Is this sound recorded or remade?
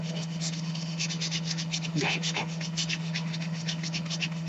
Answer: remade